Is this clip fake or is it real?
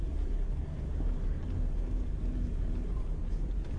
real